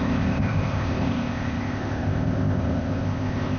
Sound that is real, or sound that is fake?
fake